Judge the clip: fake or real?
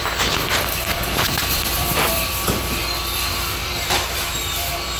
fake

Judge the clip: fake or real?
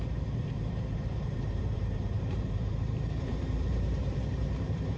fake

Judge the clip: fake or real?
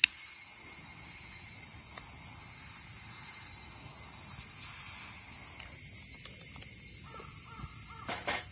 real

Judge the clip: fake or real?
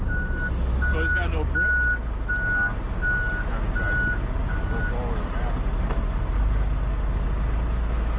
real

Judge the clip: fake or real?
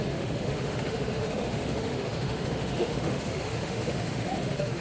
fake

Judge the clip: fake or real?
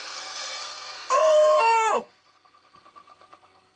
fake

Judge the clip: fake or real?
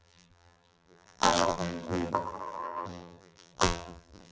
fake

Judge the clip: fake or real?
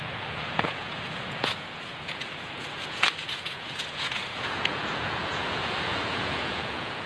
fake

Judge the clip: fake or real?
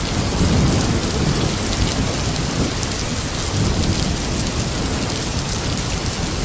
real